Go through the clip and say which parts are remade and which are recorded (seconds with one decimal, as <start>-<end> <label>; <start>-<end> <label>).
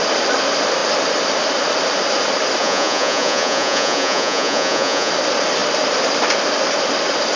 0.0-2.6 recorded; 2.6-5.1 remade; 5.1-7.4 recorded